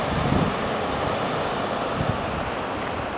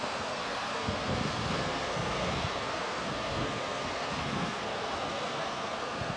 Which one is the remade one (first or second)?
second